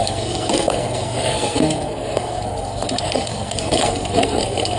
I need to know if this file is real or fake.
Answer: fake